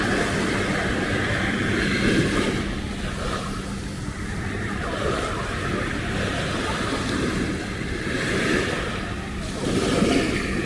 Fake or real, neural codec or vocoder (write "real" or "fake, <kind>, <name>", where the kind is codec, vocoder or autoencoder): real